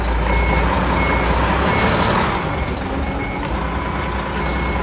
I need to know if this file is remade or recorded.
recorded